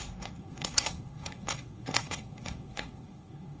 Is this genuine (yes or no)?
no